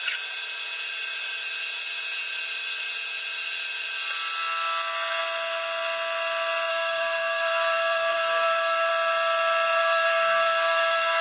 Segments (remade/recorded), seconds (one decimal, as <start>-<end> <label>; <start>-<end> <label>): 0.0-6.7 recorded; 6.7-8.9 remade; 8.9-9.8 recorded; 9.8-11.2 remade

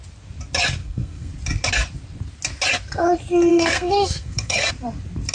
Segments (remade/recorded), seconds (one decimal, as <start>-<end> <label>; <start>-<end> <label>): 0.0-0.8 recorded; 0.8-1.3 remade; 1.3-3.5 recorded; 3.5-4.7 remade; 4.7-5.3 recorded

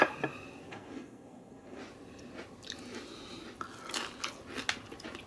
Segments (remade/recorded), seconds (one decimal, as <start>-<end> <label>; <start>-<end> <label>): 0.0-0.7 recorded; 0.7-1.8 remade; 1.8-5.3 recorded

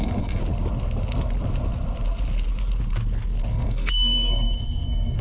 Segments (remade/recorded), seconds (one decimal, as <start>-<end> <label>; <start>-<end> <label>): 0.0-0.4 remade; 0.4-3.5 recorded; 3.5-5.2 remade